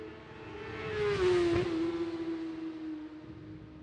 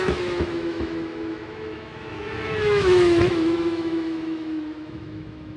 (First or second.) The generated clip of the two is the second